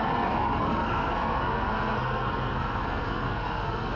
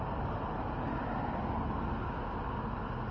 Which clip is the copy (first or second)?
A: first